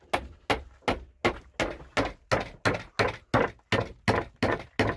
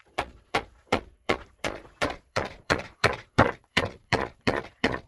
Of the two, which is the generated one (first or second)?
second